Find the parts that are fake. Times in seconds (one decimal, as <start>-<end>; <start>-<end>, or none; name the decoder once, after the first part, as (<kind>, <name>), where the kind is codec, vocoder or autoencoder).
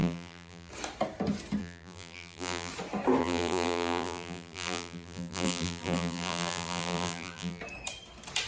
0.0-0.7 (vocoder, BigVGAN v2); 1.6-2.7; 3.2-7.6